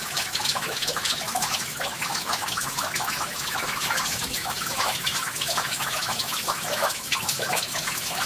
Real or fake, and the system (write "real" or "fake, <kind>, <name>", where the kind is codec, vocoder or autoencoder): fake, autoencoder, DAC-VAE